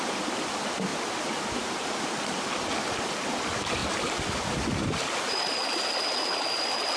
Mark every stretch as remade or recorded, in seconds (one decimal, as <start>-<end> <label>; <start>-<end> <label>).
0.0-3.8 recorded; 3.8-4.4 remade; 4.4-7.0 recorded